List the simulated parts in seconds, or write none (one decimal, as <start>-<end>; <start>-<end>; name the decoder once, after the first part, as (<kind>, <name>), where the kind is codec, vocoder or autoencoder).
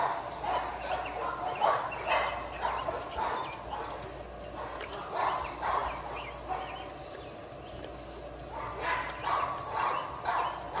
none